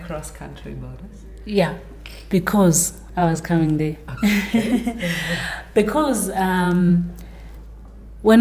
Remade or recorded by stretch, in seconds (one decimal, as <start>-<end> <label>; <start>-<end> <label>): 0.0-3.2 recorded; 3.2-6.9 remade; 6.9-8.4 recorded

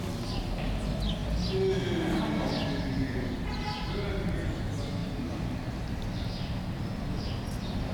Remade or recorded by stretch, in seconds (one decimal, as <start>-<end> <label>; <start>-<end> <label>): 0.0-5.0 recorded; 5.0-5.7 remade; 5.7-7.9 recorded

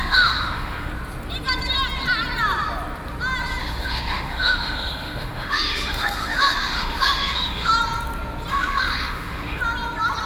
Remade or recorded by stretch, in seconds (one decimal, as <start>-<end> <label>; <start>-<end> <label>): 0.0-0.9 remade; 0.9-3.6 recorded; 3.6-7.7 remade; 7.7-8.5 recorded; 8.5-9.6 remade; 9.6-10.3 recorded